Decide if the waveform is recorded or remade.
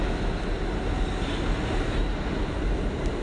recorded